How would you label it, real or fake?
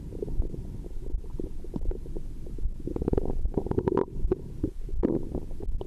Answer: real